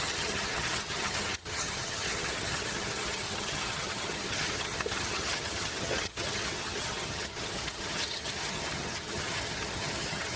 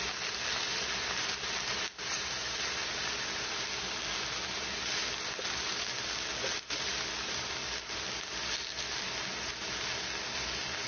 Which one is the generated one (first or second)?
first